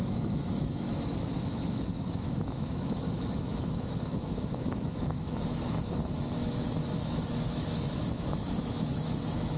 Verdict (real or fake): fake